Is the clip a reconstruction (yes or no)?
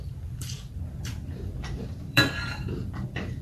yes